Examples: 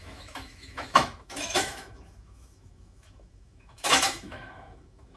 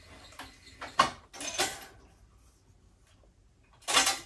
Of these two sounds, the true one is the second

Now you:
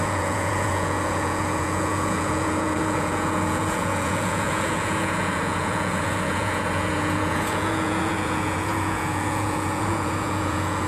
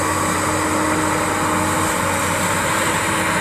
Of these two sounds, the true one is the second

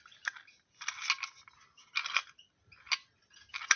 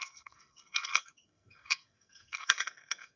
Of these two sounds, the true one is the first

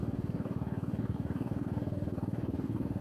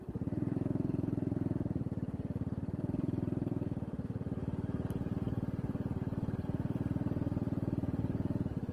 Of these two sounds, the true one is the second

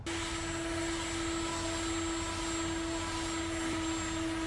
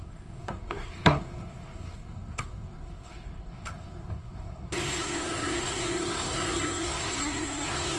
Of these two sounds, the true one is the first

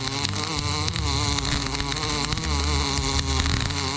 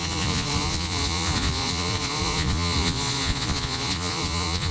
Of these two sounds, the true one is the first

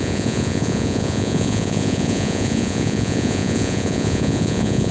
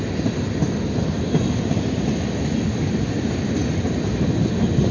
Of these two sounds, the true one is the second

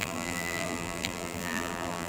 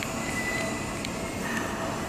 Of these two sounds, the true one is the second